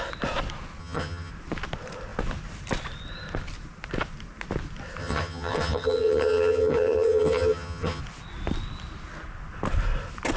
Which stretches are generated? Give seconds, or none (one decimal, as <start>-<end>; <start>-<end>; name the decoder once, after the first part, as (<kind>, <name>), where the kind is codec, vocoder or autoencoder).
0.8-1.3 (vocoder, HiFi-GAN); 5.0-8.0